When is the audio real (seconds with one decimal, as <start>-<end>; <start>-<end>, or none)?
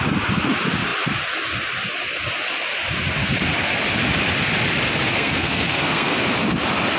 0.0-5.1; 6.2-7.0